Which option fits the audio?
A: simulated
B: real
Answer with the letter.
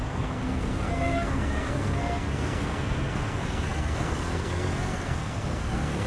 A